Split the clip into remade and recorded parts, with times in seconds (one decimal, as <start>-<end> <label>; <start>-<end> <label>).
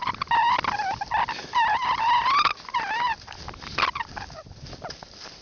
0.0-5.4 recorded